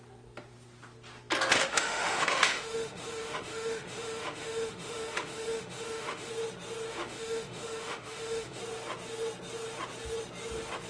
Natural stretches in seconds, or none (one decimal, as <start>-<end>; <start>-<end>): 0.0-1.6; 6.3-6.9; 8.6-10.9